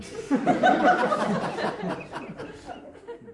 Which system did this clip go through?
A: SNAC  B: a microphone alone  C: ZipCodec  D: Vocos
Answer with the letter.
B